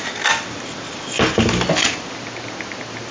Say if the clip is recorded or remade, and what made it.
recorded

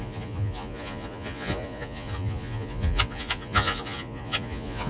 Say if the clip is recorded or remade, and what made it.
remade, vocoder, Vocos